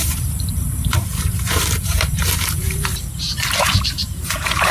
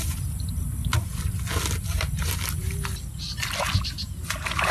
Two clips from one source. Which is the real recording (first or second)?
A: second